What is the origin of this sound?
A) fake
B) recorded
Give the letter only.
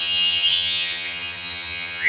A